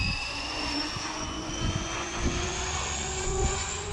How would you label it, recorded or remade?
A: remade